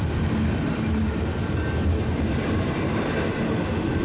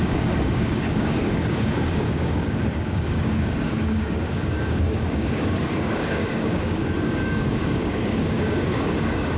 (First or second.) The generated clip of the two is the second